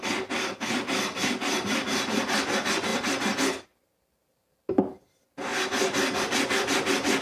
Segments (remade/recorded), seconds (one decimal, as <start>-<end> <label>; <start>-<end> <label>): 0.0-7.2 recorded